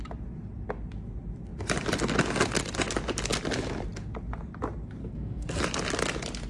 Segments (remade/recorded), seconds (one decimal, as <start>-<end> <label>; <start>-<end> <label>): 0.0-5.0 recorded; 5.0-5.6 remade; 5.6-6.5 recorded